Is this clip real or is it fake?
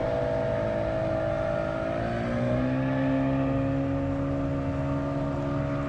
real